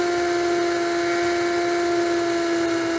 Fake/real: real